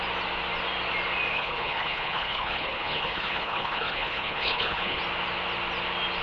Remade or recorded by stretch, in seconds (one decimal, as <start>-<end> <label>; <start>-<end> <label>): 0.0-1.3 recorded; 1.3-5.0 remade; 5.0-6.2 recorded